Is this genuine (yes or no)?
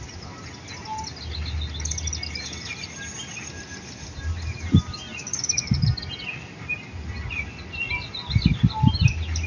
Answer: yes